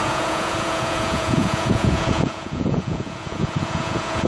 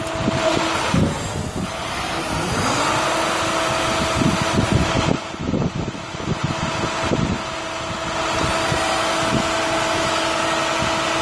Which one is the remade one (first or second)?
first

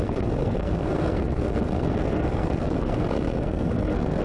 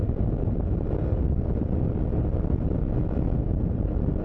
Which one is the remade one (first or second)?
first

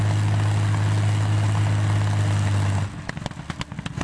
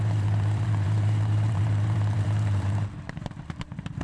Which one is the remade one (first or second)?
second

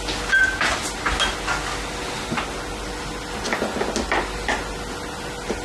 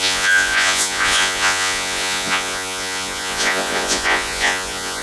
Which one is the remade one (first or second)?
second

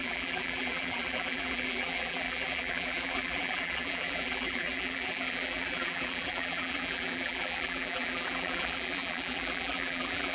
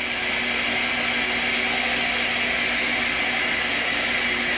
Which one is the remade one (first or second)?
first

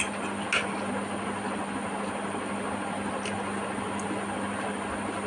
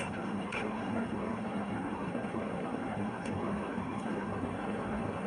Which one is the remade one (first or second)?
second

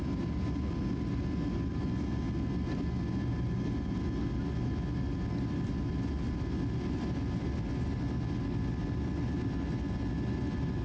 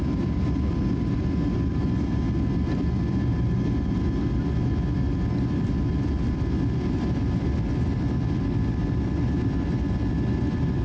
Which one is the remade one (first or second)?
second